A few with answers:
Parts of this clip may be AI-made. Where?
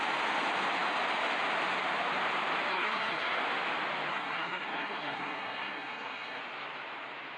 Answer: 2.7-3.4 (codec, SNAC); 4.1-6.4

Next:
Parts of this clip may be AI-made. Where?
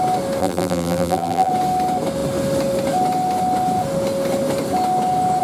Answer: 0.4-1.5 (vocoder, BigVGAN v2)